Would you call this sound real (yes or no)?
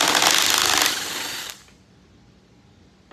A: yes